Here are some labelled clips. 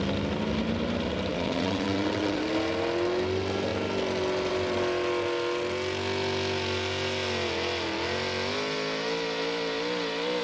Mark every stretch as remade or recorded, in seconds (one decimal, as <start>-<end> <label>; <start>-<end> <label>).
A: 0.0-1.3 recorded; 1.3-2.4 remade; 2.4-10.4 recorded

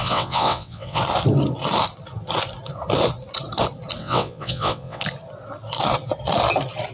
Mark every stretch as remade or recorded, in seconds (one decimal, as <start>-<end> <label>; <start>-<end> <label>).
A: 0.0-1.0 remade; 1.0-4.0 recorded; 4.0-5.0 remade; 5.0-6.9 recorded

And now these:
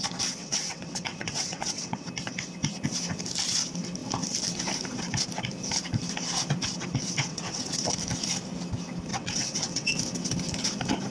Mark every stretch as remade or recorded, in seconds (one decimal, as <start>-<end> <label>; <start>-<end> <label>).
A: 0.0-0.4 recorded; 0.4-2.1 remade; 2.1-7.3 recorded; 7.3-7.9 remade; 7.9-9.1 recorded; 9.1-9.9 remade; 9.9-11.1 recorded

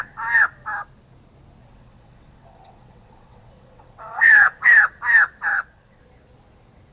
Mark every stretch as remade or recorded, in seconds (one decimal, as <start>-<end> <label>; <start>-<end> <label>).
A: 0.0-1.6 recorded; 1.6-4.7 remade; 4.7-5.5 recorded; 5.5-6.0 remade; 6.0-6.9 recorded